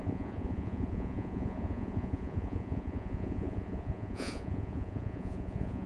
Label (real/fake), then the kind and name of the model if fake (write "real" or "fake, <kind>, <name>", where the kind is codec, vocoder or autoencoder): fake, vocoder, Vocos